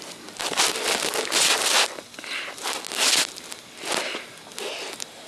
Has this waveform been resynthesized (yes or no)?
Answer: no